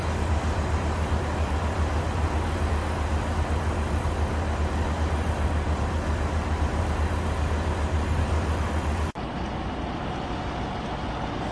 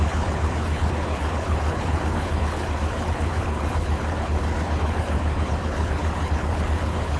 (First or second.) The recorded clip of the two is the first